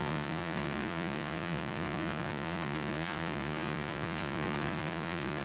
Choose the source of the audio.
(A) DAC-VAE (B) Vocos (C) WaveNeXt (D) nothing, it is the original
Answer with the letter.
B